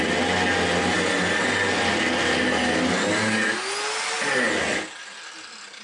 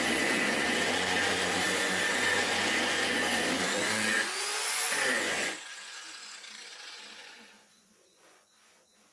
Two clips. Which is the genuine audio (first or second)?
first